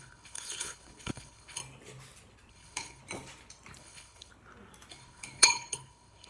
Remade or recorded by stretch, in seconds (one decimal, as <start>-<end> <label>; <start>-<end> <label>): 0.0-1.6 remade; 1.6-2.5 recorded; 2.5-3.0 remade; 3.0-3.8 recorded; 3.8-4.3 remade; 4.3-4.9 recorded; 4.9-6.3 remade